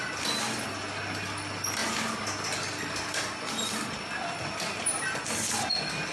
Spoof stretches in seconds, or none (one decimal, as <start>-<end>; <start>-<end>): none